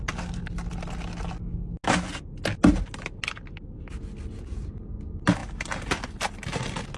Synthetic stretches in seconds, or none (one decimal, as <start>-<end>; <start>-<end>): 5.4-6.6